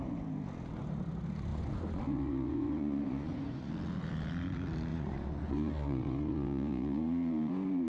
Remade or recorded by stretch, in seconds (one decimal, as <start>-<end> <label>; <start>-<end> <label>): 0.0-1.5 recorded; 1.5-3.7 remade; 3.7-4.9 recorded; 4.9-7.5 remade; 7.5-7.9 recorded